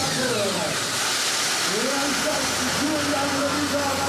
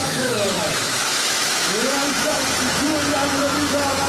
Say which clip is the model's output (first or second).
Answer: second